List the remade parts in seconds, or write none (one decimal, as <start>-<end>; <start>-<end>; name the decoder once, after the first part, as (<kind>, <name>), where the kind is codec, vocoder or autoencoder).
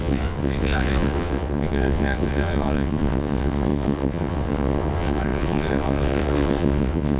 0.0-7.2 (vocoder, WaveNeXt)